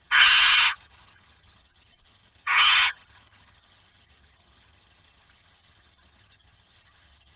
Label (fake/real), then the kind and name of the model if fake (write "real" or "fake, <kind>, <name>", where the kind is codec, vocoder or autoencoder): fake, vocoder, HiFi-GAN